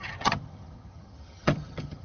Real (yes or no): no